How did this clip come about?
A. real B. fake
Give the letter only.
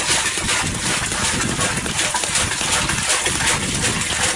A